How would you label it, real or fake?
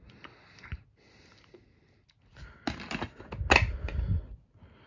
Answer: real